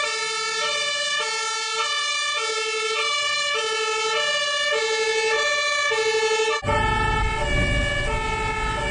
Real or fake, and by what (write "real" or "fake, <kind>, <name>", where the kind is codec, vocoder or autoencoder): real